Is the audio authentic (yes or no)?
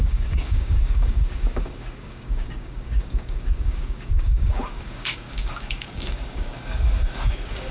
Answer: no